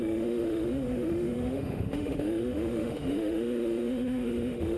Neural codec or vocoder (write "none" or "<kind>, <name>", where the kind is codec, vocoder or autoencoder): autoencoder, DAC-VAE